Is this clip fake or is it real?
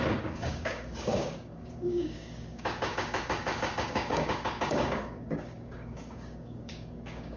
fake